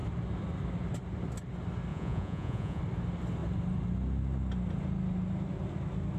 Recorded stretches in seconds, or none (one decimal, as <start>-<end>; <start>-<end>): 0.0-1.9; 2.8-6.2